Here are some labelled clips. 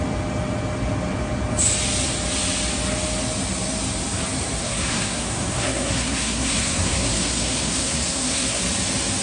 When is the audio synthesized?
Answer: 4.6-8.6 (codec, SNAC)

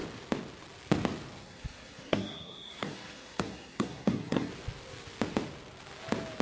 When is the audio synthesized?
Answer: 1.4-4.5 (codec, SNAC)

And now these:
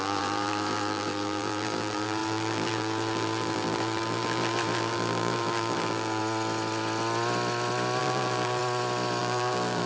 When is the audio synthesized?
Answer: 0.0-6.2 (vocoder, BigVGAN v2); 8.0-8.6; 9.2-9.9

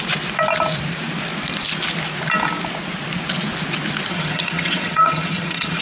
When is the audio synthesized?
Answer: 4.1-5.8 (vocoder, HiFi-GAN)

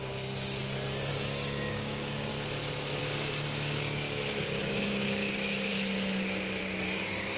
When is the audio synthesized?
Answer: 0.0-0.6 (codec, DAC); 1.1-2.3; 3.0-5.7; 6.6-7.4

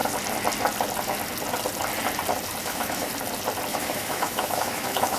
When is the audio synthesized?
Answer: 2.6-3.1 (autoencoder, DAC-VAE); 3.7-5.2

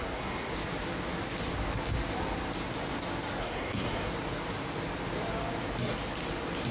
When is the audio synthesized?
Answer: 0.0-0.5 (codec, SNAC); 3.4-4.1

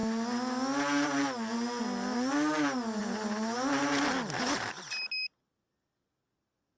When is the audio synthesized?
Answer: none